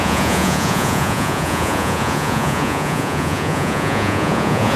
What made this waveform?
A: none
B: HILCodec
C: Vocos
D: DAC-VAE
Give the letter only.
C